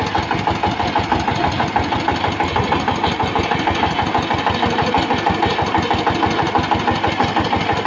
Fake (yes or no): no